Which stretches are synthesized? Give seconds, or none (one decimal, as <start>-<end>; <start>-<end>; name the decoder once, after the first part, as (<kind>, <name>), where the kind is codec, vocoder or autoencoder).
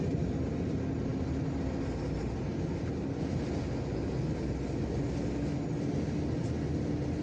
none